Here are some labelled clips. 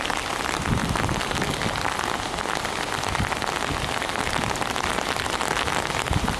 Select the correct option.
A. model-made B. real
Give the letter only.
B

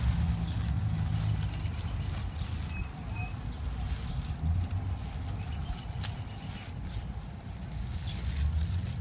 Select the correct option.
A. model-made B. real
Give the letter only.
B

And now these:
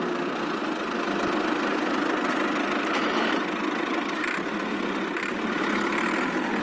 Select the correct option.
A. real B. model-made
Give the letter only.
A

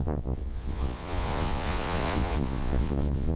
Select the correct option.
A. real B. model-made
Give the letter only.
B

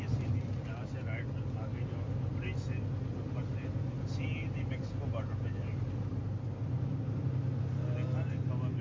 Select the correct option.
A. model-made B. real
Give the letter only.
B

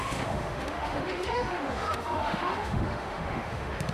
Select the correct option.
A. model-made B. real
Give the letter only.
A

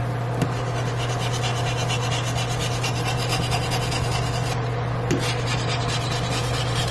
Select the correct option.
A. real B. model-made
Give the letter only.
A